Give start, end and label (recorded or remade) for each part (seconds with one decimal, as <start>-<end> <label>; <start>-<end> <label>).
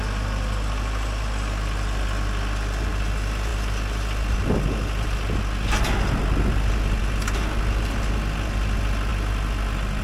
0.0-10.0 recorded